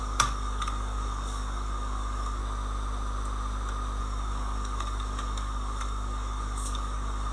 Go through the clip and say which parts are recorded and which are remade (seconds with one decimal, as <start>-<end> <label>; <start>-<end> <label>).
0.0-2.4 remade; 2.4-4.0 recorded; 4.0-7.3 remade